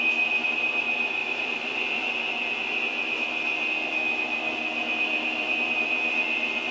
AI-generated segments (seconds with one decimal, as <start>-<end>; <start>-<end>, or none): 1.2-2.2; 4.8-6.7